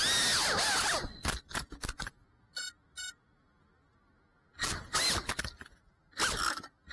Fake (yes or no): no